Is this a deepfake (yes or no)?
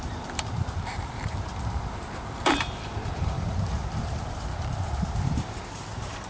yes